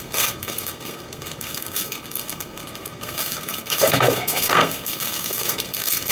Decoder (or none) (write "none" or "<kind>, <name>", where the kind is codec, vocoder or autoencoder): codec, SNAC